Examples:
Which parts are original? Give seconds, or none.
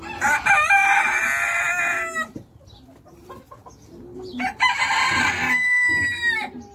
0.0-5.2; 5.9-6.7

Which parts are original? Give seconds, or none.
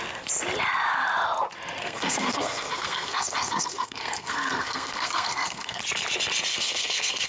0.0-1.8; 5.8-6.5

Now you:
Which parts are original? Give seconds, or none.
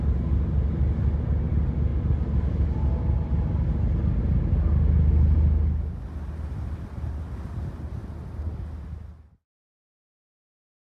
0.0-10.8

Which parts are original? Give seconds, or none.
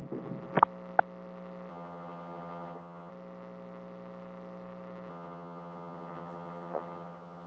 0.0-1.7; 3.1-5.1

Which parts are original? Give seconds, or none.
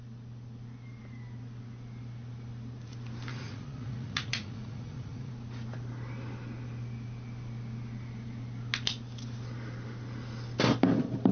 0.0-3.3; 5.3-11.3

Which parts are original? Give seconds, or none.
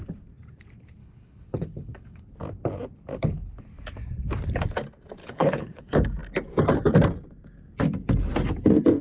0.0-1.0; 2.2-5.2; 5.8-9.0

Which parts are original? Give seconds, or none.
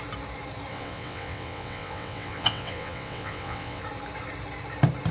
0.0-0.7; 3.8-5.1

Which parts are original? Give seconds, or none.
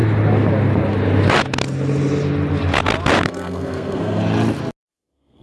0.0-3.2; 4.2-4.8